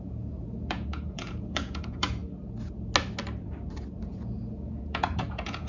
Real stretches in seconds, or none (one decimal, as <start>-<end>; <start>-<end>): 2.2-4.0